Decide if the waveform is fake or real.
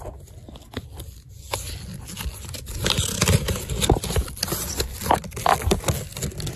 real